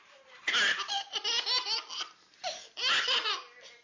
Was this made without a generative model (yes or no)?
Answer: yes